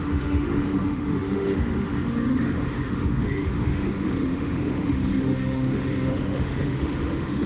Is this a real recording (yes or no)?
no